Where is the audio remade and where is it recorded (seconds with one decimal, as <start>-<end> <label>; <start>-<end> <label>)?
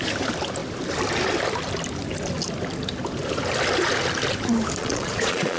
0.0-4.8 recorded; 4.8-5.6 remade